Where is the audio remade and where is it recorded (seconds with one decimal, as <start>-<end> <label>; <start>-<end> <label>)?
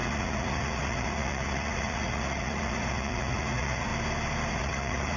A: 0.0-3.9 remade; 3.9-4.5 recorded; 4.5-5.2 remade